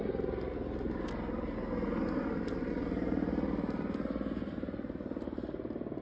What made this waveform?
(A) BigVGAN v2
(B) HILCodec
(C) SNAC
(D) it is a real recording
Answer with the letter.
D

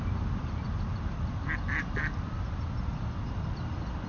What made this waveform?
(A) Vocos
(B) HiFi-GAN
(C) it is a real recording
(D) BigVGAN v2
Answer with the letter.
C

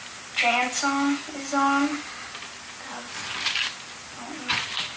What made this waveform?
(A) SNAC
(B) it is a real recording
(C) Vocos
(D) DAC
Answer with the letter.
B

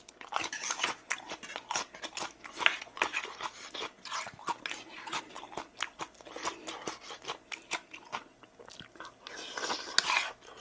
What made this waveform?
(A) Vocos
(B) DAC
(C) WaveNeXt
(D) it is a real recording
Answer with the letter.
D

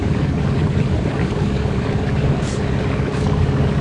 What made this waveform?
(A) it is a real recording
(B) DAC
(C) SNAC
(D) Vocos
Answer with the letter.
B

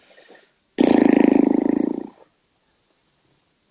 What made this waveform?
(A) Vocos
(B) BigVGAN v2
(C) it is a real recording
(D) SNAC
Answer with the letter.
C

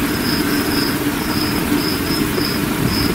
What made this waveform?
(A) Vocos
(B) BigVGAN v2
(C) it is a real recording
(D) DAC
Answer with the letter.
C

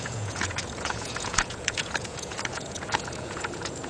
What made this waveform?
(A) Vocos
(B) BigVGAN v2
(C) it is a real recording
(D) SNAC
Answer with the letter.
A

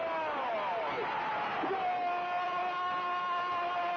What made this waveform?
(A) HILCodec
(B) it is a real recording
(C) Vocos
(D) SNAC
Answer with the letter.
B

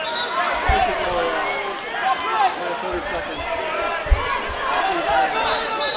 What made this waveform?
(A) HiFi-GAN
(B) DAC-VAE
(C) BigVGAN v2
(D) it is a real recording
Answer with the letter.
D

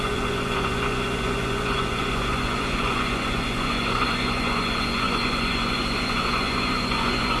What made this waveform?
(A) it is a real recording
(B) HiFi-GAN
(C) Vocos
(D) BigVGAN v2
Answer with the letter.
C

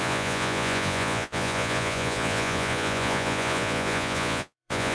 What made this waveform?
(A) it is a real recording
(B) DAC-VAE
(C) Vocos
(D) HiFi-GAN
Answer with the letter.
C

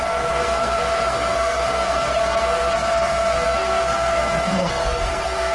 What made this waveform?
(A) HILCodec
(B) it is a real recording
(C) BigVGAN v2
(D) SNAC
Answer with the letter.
D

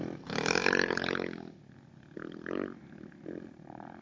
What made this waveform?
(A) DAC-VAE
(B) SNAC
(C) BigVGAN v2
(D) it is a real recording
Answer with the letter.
D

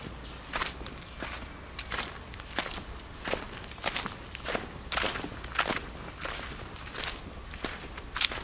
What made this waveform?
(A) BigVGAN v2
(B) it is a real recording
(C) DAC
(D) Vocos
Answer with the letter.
B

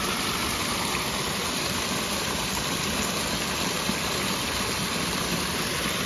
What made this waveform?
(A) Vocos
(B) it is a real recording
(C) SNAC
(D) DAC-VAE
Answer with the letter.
B